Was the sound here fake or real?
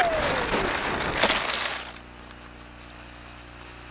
real